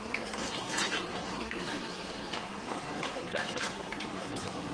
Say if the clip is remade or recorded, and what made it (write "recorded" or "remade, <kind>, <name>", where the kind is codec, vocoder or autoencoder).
remade, codec, SNAC